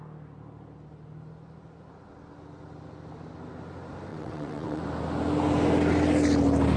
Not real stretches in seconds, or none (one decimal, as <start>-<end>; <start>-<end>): 4.1-4.8